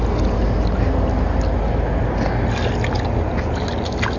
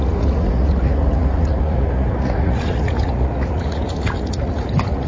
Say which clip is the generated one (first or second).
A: second